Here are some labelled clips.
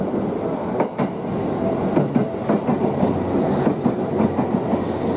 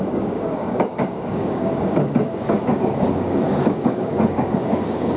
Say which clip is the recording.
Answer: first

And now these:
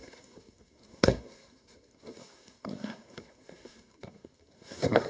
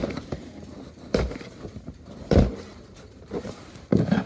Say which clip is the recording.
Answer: second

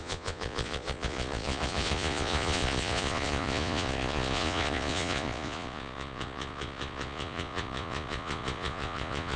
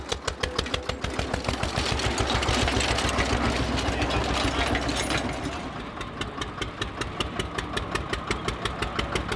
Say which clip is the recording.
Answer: second